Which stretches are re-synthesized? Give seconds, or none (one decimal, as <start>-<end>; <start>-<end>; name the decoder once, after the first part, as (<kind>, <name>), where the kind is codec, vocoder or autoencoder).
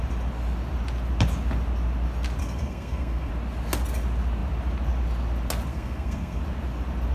2.4-3.3 (codec, SNAC); 5.7-6.4